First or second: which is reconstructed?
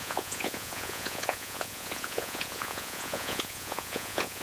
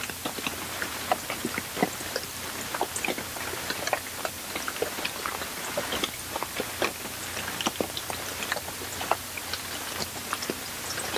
first